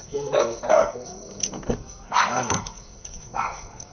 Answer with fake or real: fake